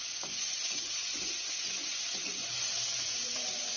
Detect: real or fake fake